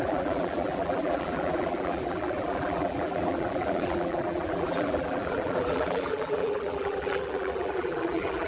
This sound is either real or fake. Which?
fake